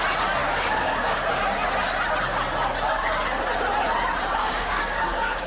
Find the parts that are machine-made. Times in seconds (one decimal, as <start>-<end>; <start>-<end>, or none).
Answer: 0.4-1.3; 4.4-5.5